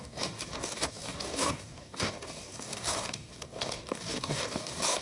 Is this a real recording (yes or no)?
no